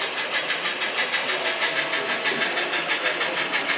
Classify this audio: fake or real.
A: real